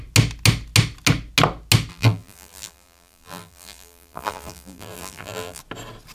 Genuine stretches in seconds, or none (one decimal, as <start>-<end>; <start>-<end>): 0.0-1.9; 5.6-6.1